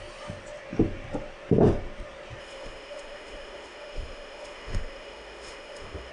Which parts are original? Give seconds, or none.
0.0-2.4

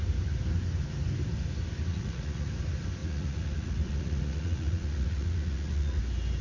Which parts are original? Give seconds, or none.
0.0-1.9; 2.5-3.0; 6.0-6.4

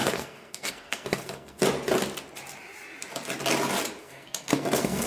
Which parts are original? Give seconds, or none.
1.6-4.0

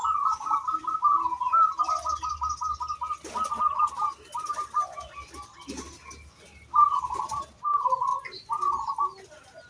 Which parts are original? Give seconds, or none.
0.0-9.7

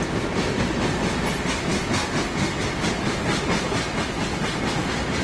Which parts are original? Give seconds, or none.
0.0-5.2